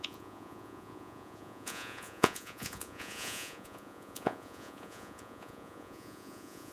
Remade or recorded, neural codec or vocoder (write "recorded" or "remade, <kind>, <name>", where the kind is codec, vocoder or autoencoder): remade, vocoder, Vocos